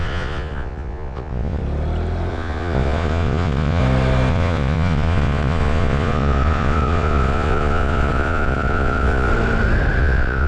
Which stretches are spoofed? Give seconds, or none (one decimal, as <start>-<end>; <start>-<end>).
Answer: 0.0-1.6; 2.3-3.8; 4.3-9.3; 10.0-10.5